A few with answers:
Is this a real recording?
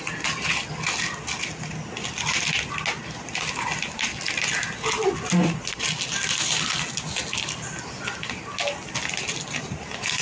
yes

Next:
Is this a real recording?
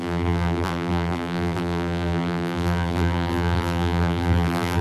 no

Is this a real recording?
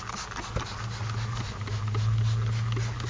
yes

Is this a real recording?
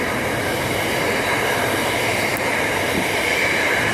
no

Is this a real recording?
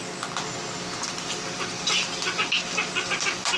yes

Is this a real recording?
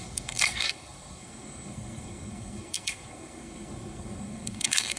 no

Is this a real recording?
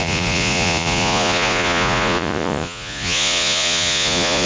no